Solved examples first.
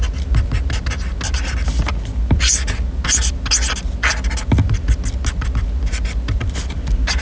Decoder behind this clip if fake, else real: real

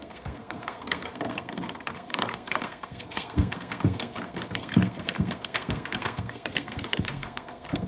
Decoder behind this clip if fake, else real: fake, codec, SNAC